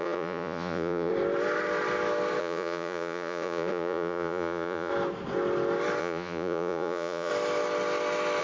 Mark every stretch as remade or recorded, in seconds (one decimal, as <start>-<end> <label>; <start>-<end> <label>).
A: 0.0-1.1 remade; 1.1-2.4 recorded; 2.4-4.9 remade; 4.9-6.0 recorded; 6.0-7.3 remade; 7.3-8.4 recorded